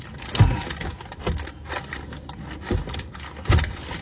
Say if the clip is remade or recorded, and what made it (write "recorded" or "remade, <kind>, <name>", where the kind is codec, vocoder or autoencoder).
recorded